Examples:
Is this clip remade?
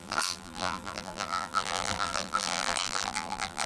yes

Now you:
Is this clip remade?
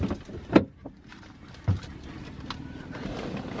no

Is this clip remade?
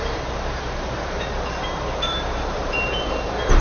yes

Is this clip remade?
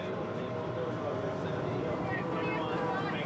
yes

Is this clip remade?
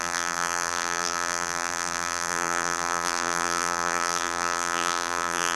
yes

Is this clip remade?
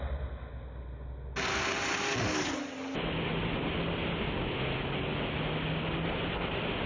no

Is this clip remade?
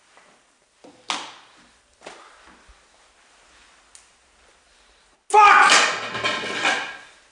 no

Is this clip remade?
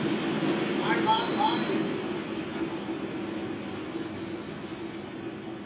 no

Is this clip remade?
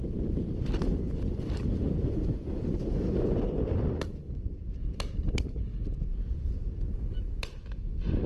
yes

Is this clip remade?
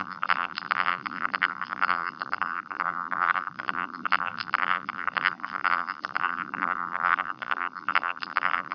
yes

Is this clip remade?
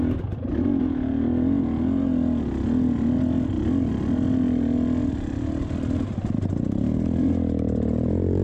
no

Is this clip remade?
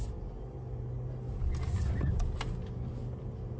no